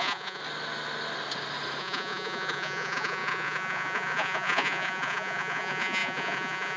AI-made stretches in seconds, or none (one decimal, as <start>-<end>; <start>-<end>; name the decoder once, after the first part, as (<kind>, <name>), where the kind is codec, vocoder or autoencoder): 0.0-0.4 (vocoder, Vocos); 1.8-6.8